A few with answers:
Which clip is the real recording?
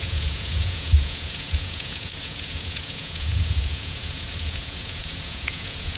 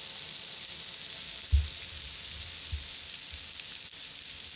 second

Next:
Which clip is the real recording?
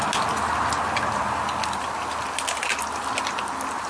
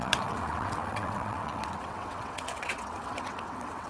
first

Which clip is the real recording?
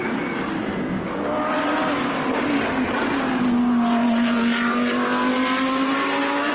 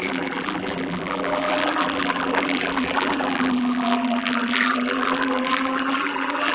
first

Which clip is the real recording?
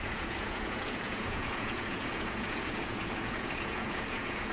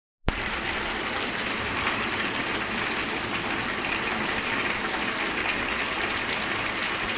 second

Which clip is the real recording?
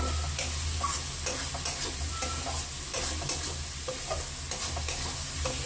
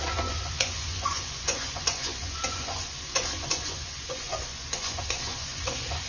first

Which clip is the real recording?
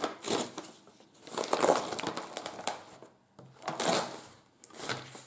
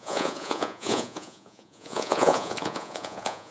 first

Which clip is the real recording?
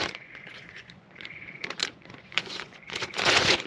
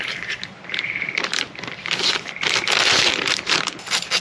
second